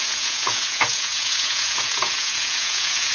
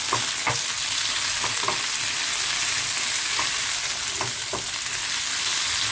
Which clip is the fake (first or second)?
first